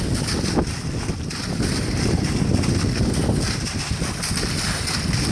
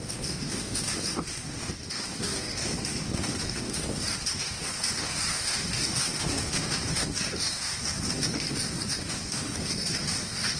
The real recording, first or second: first